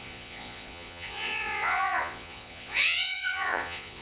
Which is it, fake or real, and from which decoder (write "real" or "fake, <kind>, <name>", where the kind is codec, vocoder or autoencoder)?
fake, vocoder, Vocos